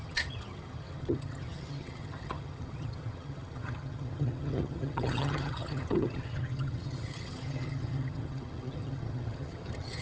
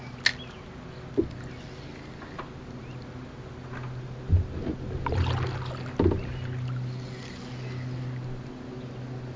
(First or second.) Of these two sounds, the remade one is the first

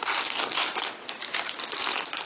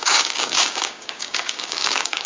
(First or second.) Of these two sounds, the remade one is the second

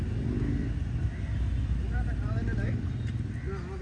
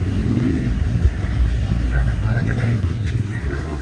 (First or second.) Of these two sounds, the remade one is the second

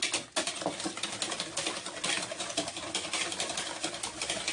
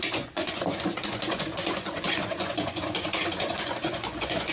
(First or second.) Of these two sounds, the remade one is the second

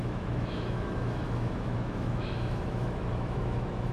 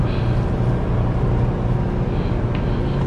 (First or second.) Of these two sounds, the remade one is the first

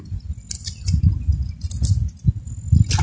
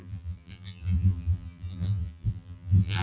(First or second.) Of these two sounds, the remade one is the second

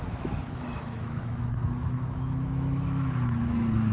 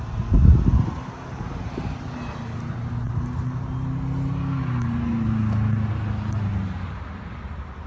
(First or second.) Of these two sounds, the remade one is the first